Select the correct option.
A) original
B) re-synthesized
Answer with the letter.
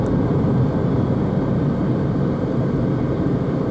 A